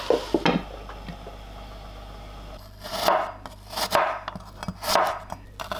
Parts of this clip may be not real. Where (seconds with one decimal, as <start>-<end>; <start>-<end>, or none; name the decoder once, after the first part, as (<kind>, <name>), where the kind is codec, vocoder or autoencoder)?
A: none